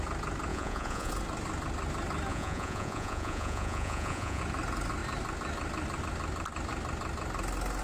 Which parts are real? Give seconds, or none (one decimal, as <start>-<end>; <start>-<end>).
0.0-0.5; 1.1-2.3; 4.4-7.8

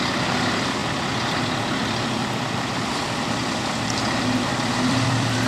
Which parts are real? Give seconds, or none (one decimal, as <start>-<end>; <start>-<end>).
0.0-0.8; 1.4-2.2

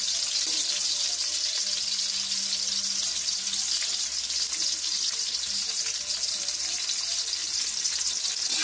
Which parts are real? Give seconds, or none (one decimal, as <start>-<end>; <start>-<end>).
0.0-8.6

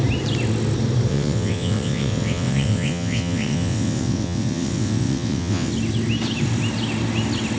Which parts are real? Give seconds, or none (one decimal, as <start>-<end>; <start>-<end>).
0.0-1.1; 5.7-7.6